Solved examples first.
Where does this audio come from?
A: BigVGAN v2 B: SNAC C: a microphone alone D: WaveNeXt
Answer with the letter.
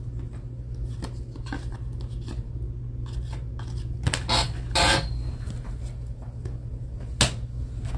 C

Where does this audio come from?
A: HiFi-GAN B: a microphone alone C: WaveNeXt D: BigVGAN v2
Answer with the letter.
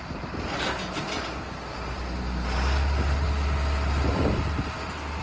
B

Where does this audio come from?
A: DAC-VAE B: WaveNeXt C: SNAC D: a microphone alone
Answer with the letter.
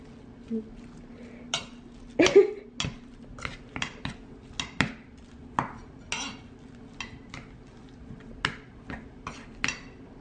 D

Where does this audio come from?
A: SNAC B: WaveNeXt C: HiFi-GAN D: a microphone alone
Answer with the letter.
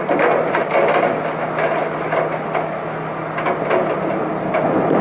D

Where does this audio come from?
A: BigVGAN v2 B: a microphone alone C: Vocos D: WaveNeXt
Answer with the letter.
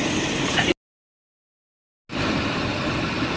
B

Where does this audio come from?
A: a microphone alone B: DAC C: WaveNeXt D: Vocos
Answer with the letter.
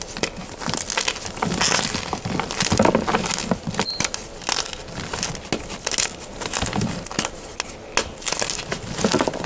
A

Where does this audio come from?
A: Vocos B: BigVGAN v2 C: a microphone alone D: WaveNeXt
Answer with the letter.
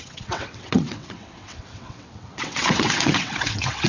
D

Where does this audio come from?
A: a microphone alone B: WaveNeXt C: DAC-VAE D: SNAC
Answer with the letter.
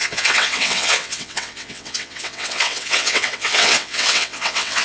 B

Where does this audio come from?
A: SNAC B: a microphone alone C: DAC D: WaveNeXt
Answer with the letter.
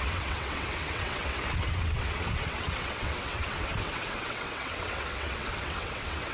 D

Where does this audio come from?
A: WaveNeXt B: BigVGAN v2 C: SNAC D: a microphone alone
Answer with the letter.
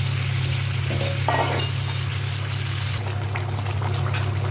D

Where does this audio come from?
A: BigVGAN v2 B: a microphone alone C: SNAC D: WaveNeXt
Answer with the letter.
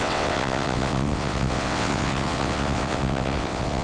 D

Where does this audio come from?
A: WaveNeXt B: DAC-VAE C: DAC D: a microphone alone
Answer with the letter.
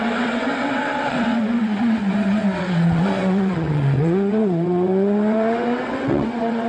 A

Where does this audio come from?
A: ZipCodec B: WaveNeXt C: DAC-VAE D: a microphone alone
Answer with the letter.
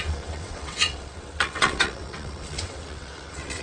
B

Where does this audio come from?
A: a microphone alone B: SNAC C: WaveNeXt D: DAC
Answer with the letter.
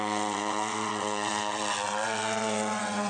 C